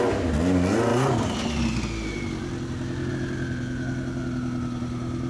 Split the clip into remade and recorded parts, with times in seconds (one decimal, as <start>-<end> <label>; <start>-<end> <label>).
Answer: 0.0-5.3 recorded